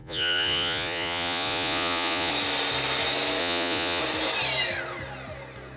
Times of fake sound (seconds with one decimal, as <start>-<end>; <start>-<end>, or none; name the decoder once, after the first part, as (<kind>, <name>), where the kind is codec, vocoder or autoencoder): 0.0-2.3 (vocoder, Vocos); 3.4-4.0